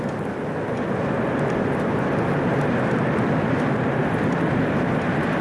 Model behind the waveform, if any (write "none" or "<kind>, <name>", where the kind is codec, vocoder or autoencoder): none